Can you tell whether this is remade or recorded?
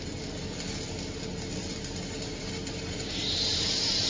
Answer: recorded